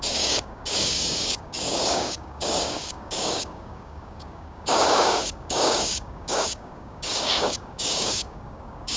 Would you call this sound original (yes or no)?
no